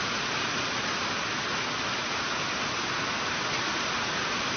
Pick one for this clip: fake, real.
real